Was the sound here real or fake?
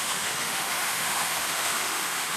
fake